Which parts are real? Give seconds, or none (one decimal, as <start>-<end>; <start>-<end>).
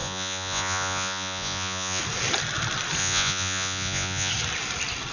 2.0-3.0; 4.3-5.1